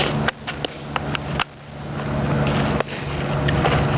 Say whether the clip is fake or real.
real